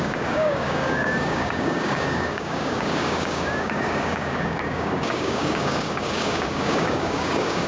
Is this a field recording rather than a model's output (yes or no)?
no